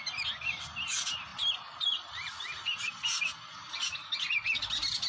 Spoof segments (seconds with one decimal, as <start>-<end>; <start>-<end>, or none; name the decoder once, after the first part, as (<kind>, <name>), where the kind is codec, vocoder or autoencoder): none